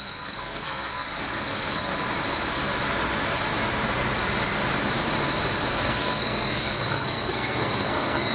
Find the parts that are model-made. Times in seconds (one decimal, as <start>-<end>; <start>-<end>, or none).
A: 0.0-1.9; 5.7-8.3